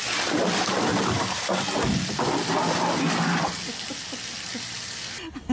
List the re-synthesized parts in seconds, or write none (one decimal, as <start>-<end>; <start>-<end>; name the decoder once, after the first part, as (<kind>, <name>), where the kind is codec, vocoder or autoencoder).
none